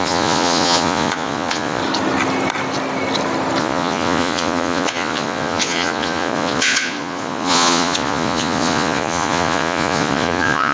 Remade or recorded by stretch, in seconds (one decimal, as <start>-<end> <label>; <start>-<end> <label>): 0.0-1.8 remade; 1.8-3.6 recorded; 3.6-10.7 remade